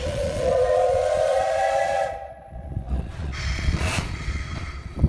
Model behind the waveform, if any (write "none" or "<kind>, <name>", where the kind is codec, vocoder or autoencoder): vocoder, Vocos